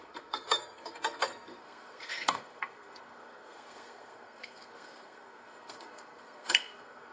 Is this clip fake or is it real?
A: fake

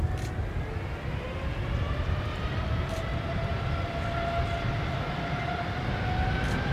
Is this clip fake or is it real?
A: real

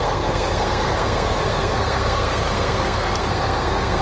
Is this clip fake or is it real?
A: fake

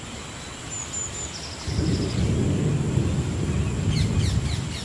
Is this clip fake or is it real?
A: real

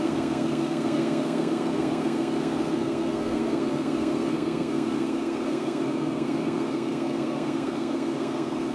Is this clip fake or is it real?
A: fake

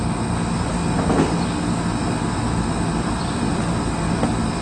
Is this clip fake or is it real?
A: real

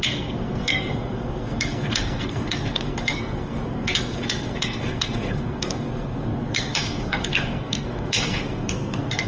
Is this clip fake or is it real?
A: fake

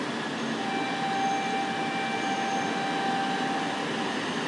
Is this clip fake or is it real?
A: real